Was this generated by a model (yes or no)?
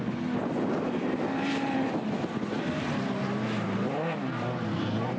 no